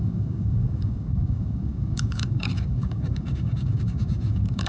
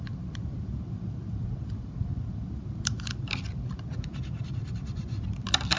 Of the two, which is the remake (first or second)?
first